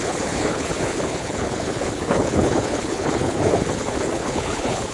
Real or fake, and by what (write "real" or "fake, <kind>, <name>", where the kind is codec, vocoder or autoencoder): fake, codec, HILCodec